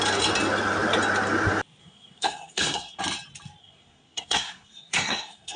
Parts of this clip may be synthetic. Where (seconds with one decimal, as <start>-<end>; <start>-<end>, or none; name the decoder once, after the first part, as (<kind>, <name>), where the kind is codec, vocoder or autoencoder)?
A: 1.8-3.0 (codec, SNAC); 3.6-5.6